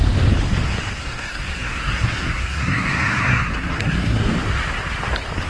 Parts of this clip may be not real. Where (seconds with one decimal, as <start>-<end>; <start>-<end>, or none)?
1.0-4.3